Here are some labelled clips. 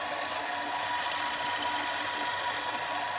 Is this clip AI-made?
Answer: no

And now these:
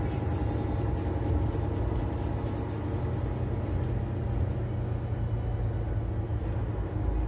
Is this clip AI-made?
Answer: no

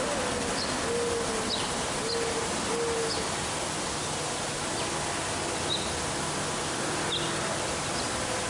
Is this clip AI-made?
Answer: no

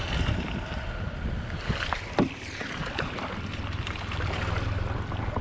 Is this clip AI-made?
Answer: yes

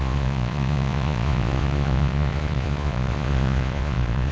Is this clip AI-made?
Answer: yes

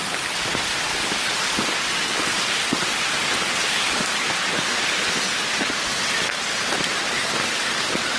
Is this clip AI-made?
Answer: no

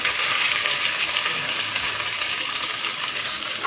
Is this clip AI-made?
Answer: yes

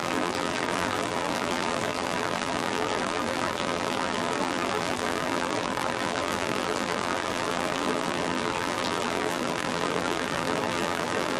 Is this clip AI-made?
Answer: yes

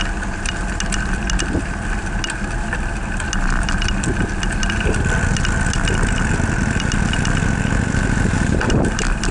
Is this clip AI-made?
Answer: no